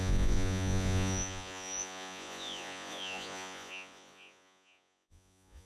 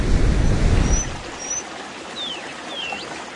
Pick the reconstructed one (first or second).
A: first